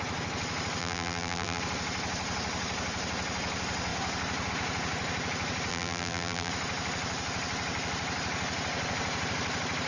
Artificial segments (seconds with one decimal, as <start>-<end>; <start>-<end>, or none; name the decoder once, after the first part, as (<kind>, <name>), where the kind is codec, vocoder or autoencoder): 0.8-1.6 (vocoder, BigVGAN v2); 5.7-6.5